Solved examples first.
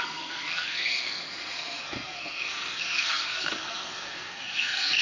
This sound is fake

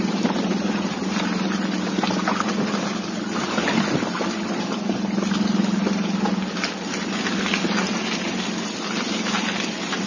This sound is real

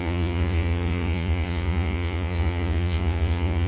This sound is fake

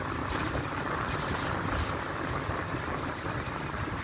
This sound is real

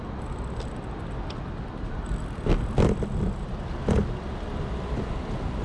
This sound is real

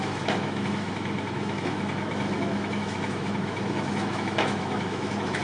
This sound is fake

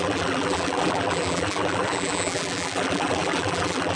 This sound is fake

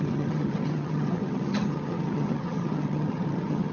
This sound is fake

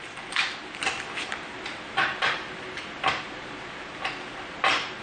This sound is real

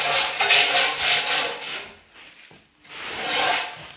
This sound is real